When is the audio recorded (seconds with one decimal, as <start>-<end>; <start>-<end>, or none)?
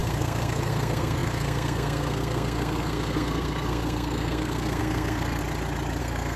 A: 5.4-6.0